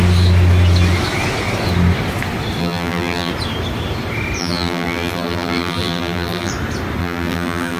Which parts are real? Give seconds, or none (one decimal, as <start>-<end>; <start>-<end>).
0.0-2.6; 3.3-4.4; 6.5-7.0